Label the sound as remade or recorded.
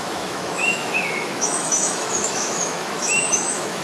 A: remade